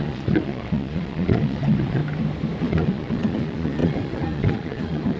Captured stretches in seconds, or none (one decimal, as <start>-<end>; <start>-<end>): 2.0-2.6